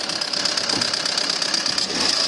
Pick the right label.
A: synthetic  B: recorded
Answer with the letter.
B